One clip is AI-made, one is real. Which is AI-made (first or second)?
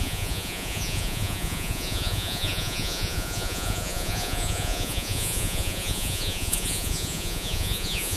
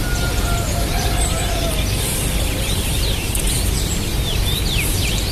first